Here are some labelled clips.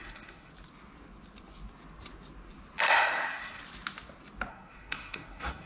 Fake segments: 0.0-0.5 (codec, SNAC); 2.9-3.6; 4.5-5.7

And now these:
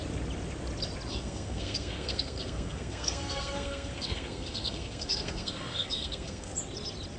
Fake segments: 1.1-6.5 (codec, SNAC)

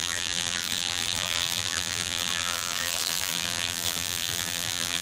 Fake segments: 0.0-5.0 (vocoder, BigVGAN v2)

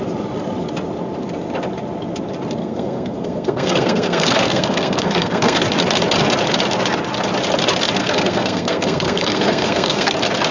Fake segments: 2.6-5.6 (codec, SNAC); 8.0-10.1

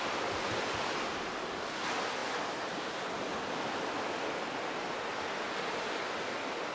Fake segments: none

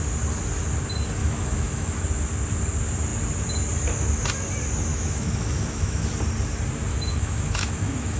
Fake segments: 1.2-2.0 (autoencoder, DAC-VAE); 4.9-6.0; 6.9-8.2